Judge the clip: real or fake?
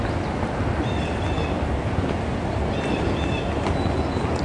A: real